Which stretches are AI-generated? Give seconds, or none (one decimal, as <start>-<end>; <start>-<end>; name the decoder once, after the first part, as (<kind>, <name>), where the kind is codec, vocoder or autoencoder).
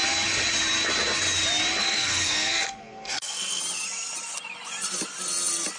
1.8-3.6 (codec, SNAC)